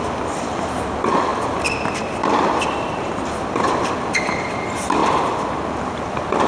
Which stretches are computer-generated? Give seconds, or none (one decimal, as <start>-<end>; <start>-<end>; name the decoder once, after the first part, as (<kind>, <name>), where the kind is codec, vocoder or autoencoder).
0.0-5.0 (vocoder, BigVGAN v2); 5.8-6.5